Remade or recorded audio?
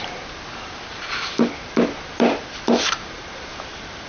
recorded